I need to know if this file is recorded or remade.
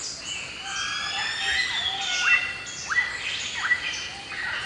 recorded